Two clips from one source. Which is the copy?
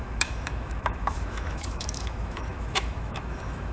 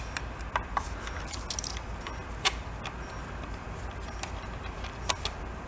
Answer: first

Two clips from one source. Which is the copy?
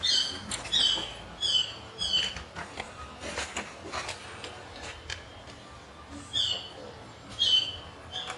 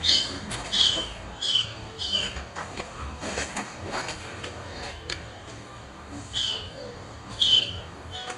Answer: second